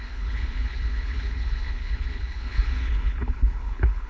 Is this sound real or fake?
fake